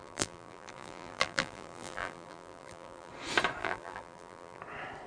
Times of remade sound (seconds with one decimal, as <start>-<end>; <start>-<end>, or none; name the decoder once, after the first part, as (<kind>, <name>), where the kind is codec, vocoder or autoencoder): 0.0-3.1 (vocoder, BigVGAN v2); 3.6-4.6